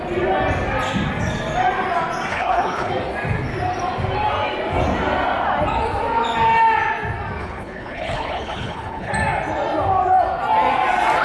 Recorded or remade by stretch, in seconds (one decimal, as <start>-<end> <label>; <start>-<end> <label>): 0.0-2.3 recorded; 2.3-2.9 remade; 2.9-7.4 recorded; 7.4-9.1 remade; 9.1-11.2 recorded